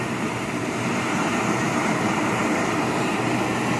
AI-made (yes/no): yes